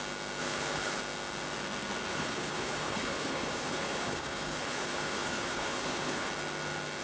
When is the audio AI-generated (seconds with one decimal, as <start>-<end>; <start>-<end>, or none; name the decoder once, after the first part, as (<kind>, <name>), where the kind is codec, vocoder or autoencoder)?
0.4-1.0 (codec, HILCodec); 2.1-6.3